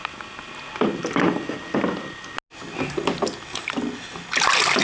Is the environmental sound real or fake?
real